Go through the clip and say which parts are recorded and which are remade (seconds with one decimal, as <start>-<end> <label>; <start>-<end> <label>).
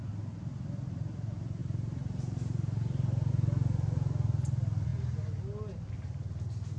0.0-1.6 recorded; 1.6-3.3 remade; 3.3-6.8 recorded